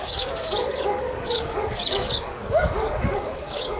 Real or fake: fake